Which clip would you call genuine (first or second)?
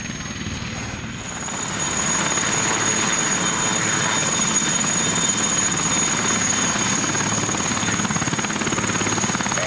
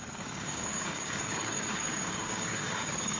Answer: first